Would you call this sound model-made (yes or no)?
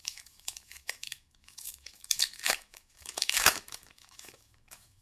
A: yes